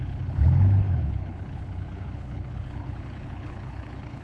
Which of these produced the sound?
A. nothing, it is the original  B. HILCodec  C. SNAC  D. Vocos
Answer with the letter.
B